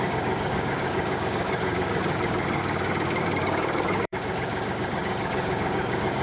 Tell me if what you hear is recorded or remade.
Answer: remade